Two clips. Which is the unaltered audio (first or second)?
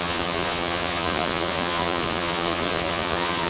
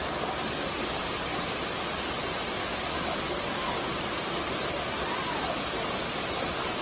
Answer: second